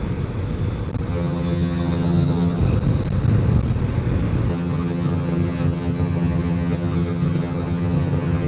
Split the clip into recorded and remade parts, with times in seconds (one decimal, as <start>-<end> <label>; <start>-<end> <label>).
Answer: 0.0-1.1 recorded; 1.1-2.6 remade; 2.6-4.5 recorded; 4.5-8.5 remade